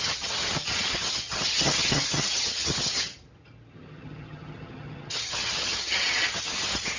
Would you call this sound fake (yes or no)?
yes